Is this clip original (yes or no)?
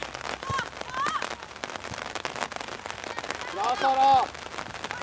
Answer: yes